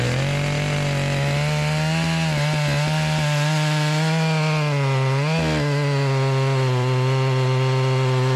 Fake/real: real